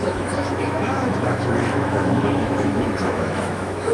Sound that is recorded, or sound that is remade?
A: remade